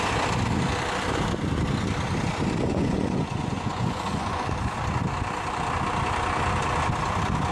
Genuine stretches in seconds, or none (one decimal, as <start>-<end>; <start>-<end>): 0.0-2.7; 4.5-7.5